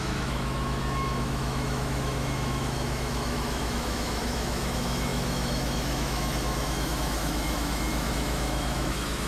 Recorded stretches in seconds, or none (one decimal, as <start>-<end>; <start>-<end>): none